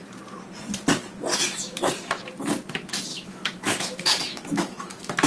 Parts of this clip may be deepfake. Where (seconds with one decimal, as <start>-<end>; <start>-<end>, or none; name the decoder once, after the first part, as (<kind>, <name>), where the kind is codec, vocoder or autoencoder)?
1.3-1.9 (autoencoder, DAC-VAE); 3.1-5.3